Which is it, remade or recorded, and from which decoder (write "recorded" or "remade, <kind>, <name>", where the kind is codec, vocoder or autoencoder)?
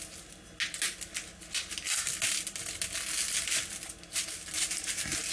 recorded